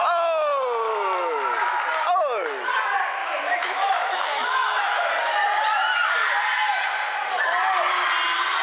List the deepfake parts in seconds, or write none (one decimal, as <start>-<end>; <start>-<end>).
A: 3.2-5.1